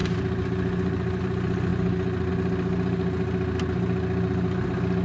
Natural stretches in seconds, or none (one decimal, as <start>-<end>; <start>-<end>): 0.0-5.0